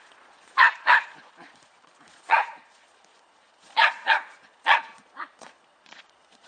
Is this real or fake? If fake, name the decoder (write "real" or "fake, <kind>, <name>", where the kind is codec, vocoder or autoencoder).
fake, vocoder, Vocos